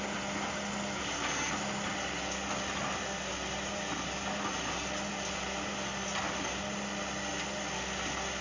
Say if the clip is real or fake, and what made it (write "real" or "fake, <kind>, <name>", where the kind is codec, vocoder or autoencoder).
real